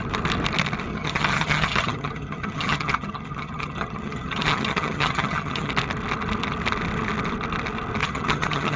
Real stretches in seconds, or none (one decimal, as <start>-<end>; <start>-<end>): 0.0-0.9; 5.7-8.0